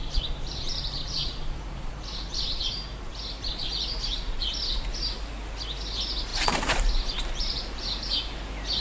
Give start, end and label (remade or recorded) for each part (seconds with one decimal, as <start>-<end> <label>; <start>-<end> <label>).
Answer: 0.0-4.4 remade; 4.4-6.3 recorded; 6.3-8.8 remade